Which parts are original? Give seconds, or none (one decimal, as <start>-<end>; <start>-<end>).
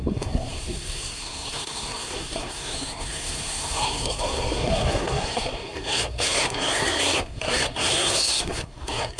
none